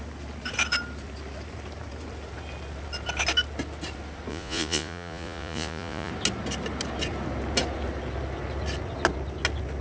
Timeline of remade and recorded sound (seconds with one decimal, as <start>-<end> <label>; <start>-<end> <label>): 0.0-4.3 recorded; 4.3-6.1 remade; 6.1-9.8 recorded